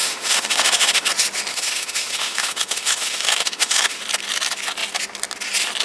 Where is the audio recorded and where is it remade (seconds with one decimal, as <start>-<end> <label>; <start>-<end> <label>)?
0.0-1.1 remade; 1.1-1.5 recorded; 1.5-4.0 remade; 4.0-5.8 recorded

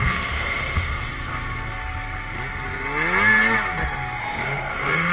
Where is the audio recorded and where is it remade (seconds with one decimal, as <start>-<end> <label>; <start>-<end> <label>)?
0.0-1.1 remade; 1.1-4.2 recorded; 4.2-5.1 remade

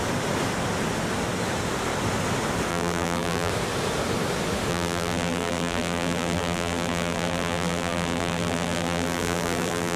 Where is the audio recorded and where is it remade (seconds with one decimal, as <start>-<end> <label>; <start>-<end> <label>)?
0.0-2.7 recorded; 2.7-3.5 remade; 3.5-4.7 recorded; 4.7-10.0 remade

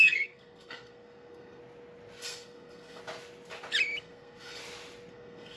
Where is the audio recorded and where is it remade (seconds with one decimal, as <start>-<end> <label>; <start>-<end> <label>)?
0.0-1.6 remade; 1.6-2.2 recorded; 2.2-3.0 remade; 3.0-4.0 recorded; 4.0-4.6 remade; 4.6-5.1 recorded; 5.1-5.6 remade